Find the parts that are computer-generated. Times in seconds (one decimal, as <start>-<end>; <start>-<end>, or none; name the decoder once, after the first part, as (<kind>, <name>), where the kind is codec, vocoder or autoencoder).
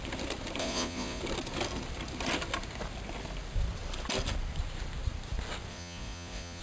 0.6-1.2 (vocoder, Vocos); 5.7-6.6